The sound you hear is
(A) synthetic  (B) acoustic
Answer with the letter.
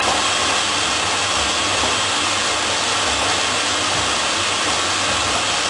B